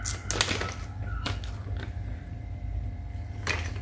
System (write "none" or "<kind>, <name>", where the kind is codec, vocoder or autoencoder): none